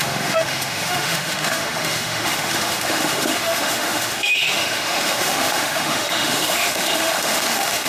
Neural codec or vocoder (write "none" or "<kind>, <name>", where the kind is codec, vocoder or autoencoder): autoencoder, DAC-VAE